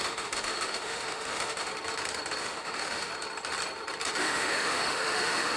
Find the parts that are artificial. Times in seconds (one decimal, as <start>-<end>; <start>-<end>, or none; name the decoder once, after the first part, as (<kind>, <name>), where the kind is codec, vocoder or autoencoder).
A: 0.0-1.7 (autoencoder, DAC-VAE); 2.4-3.1; 4.2-5.6